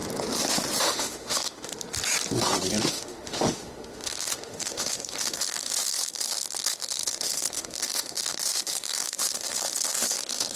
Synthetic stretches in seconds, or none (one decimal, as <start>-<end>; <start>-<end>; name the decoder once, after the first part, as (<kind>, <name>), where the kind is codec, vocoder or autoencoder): 0.8-1.7 (autoencoder, DAC-VAE); 2.9-10.6